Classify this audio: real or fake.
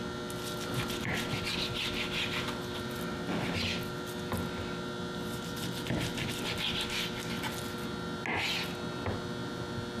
real